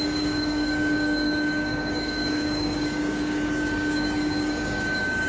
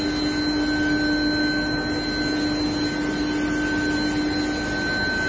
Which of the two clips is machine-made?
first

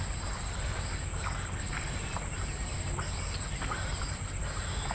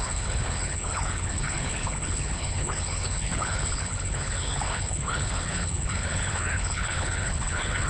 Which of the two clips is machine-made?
second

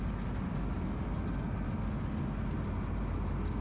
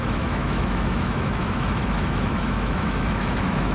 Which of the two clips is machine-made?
second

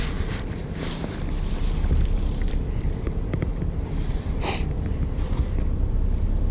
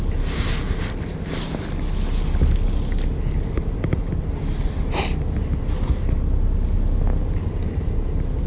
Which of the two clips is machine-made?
first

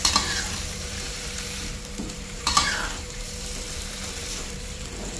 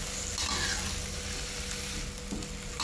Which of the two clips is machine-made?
first